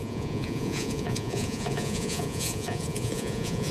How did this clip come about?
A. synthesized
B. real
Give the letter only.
A